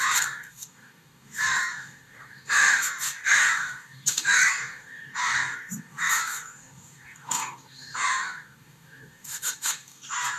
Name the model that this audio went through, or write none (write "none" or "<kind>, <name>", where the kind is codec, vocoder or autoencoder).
codec, DAC